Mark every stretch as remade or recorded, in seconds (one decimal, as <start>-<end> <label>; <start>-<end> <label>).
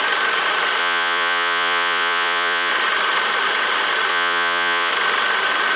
0.0-0.8 recorded; 0.8-2.7 remade; 2.7-4.1 recorded; 4.1-4.9 remade; 4.9-5.8 recorded